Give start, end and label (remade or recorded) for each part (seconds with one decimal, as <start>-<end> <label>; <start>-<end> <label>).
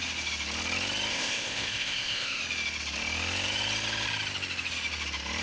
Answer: 0.0-1.1 recorded; 1.1-2.4 remade; 2.4-5.4 recorded